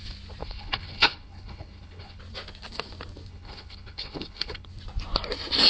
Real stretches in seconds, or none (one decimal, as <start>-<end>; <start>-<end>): 0.0-0.4; 2.2-3.3; 4.7-5.7